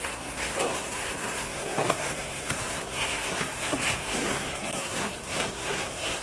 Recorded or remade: remade